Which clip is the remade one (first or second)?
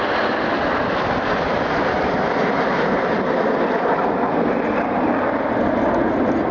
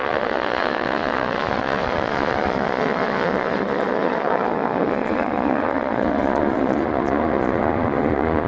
second